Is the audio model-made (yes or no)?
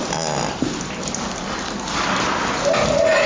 no